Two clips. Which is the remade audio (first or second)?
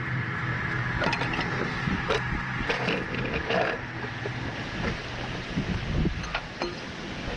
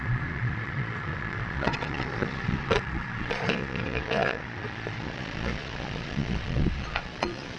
second